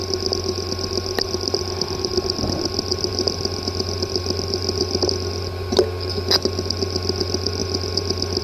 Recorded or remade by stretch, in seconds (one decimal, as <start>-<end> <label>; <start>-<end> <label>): 0.0-3.1 recorded; 3.1-4.8 remade; 4.8-8.4 recorded